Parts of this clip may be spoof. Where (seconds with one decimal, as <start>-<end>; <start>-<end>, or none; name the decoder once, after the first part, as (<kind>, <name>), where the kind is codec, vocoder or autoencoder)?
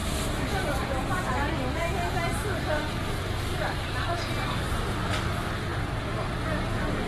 0.0-1.5 (vocoder, BigVGAN v2); 3.5-5.1; 5.7-6.3